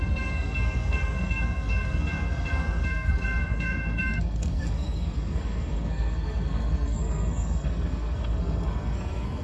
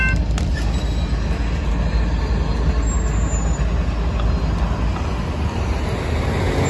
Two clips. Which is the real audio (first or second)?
second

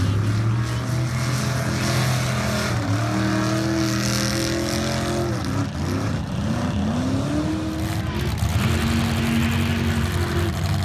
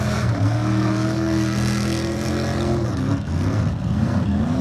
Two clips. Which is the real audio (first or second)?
first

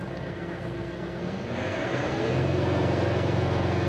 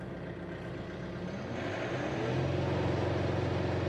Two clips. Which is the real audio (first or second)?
second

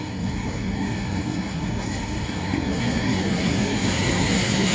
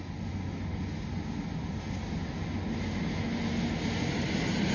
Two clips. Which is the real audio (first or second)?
second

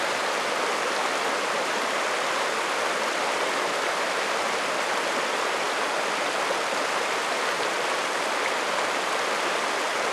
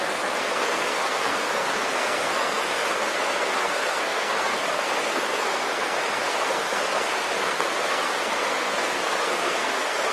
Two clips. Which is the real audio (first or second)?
first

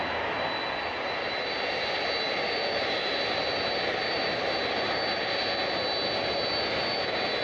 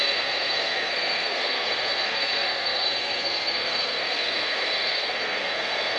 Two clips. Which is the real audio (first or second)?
first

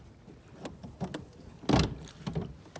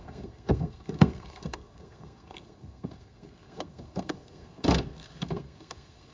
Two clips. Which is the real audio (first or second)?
first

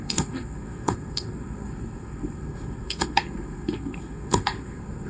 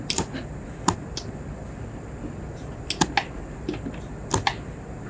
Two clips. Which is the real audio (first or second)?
second